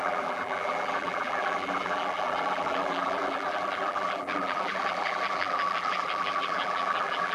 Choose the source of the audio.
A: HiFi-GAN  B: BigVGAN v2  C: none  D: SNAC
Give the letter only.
B